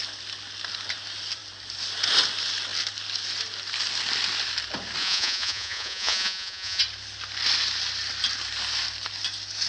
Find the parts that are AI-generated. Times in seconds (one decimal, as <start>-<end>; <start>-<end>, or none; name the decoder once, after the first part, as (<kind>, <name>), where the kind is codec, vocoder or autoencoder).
5.0-6.8 (vocoder, Vocos)